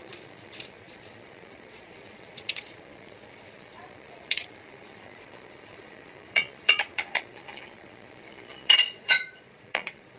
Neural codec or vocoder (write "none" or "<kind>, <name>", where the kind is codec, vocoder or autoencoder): vocoder, Vocos